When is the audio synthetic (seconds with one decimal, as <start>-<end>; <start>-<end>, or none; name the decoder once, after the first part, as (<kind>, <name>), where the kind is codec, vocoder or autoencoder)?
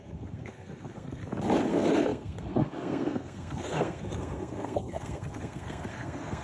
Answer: 0.0-1.2 (codec, SNAC); 1.7-6.4